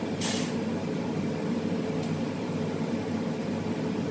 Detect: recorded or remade recorded